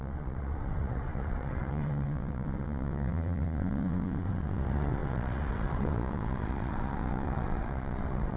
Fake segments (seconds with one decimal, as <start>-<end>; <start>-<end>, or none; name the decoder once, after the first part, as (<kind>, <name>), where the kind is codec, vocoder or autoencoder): 0.0-8.4 (vocoder, WaveNeXt)